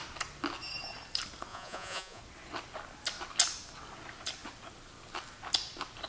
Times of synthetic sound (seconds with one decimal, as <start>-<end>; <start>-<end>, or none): 1.5-2.2